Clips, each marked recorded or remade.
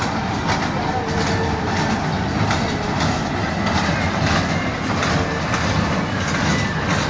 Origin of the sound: recorded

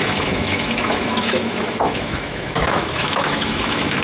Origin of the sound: remade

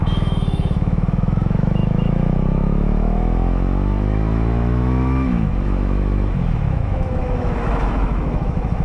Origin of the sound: remade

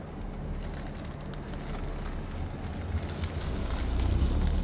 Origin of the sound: recorded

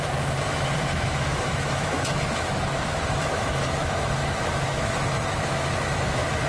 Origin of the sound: remade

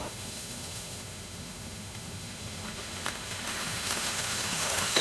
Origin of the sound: remade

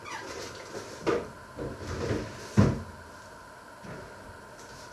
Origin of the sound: recorded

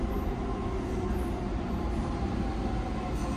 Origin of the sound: recorded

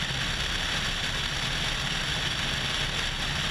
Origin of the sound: recorded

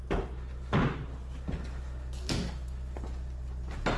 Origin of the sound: recorded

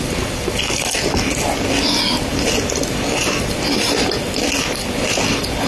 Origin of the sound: recorded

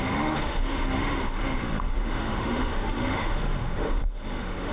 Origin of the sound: remade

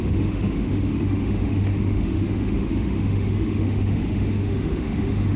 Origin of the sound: remade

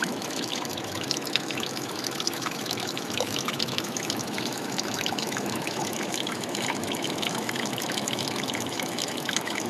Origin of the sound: remade